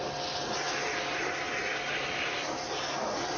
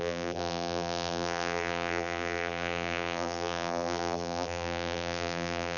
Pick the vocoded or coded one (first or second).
second